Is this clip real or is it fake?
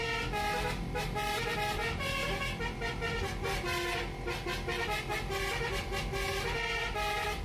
real